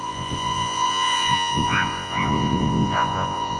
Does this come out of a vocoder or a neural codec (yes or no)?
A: yes